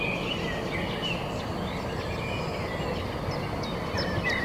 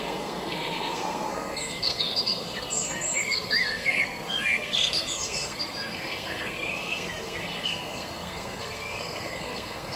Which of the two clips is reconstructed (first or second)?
second